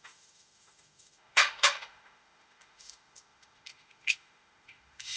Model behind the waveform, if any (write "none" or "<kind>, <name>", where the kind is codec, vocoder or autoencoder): autoencoder, DAC-VAE